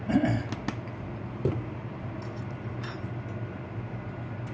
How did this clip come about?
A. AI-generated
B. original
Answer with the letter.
B